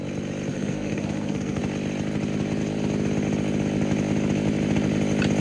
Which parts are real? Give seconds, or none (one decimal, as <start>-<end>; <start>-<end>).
0.0-0.5; 1.6-5.4